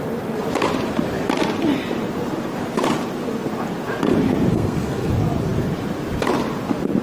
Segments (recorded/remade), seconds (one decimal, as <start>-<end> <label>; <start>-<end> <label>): 0.0-4.5 recorded; 4.5-5.1 remade; 5.1-7.0 recorded